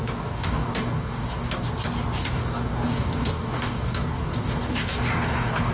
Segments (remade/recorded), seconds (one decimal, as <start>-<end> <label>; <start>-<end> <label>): 0.0-1.7 remade; 1.7-2.2 recorded; 2.2-5.7 remade